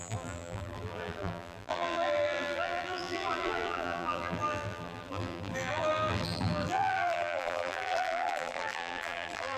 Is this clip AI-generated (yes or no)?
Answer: yes